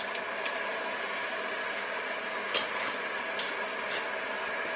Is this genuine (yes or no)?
yes